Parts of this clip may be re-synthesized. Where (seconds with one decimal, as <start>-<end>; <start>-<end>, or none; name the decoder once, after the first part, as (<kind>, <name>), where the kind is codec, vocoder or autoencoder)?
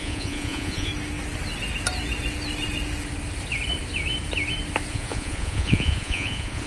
0.0-0.9 (vocoder, Vocos); 4.9-6.7